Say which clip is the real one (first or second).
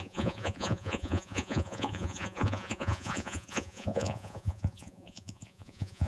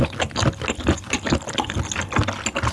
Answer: second